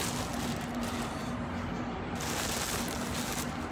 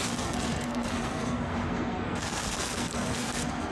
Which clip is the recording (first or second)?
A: first